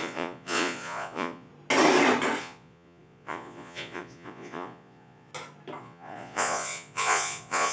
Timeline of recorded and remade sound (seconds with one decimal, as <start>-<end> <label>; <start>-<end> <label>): 0.0-1.5 remade; 1.5-2.4 recorded; 2.4-5.3 remade; 5.3-5.8 recorded; 5.8-7.7 remade

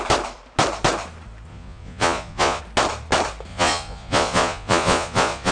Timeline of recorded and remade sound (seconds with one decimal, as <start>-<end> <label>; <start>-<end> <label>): 0.0-1.5 recorded; 1.5-2.6 remade; 2.6-3.5 recorded; 3.5-5.5 remade

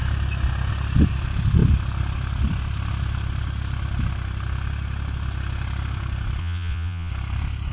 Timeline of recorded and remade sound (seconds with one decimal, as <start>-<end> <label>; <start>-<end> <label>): 0.0-6.4 recorded; 6.4-7.1 remade; 7.1-7.7 recorded

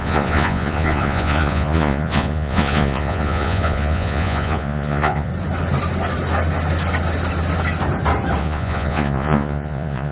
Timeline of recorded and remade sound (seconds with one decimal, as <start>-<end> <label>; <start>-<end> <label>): 0.0-5.3 remade; 5.3-8.4 recorded; 8.4-10.1 remade

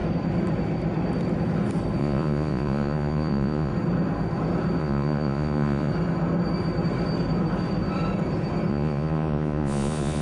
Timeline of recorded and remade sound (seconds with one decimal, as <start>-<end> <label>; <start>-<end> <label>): 0.0-2.0 recorded; 2.0-3.7 remade; 3.7-4.8 recorded; 4.8-5.9 remade; 5.9-8.7 recorded; 8.7-10.2 remade

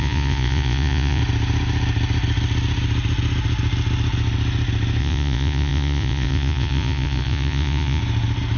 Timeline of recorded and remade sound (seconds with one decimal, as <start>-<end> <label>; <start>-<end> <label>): 0.0-1.2 remade; 1.2-5.0 recorded; 5.0-8.0 remade; 8.0-8.6 recorded

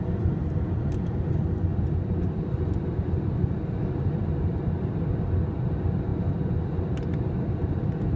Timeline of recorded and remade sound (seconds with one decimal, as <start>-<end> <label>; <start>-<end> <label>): 0.0-8.2 recorded

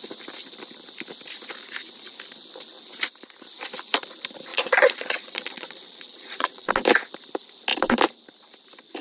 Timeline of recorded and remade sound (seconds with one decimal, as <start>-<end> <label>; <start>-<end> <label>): 0.0-4.5 recorded; 4.5-6.7 remade; 6.7-9.0 recorded